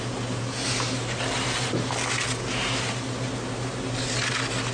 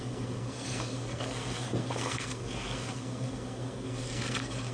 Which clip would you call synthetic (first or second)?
second